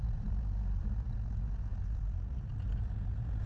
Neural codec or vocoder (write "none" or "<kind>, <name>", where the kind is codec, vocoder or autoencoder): none